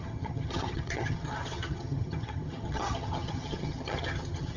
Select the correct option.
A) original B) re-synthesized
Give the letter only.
B